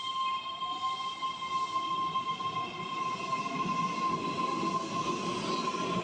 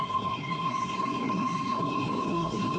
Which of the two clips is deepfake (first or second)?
second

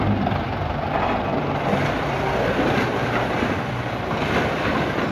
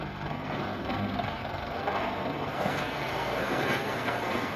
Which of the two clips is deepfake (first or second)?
second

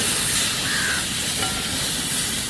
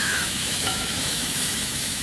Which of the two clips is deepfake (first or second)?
second